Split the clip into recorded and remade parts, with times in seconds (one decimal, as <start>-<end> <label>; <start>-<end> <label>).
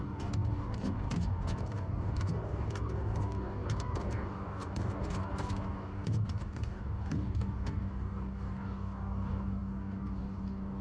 0.0-10.8 remade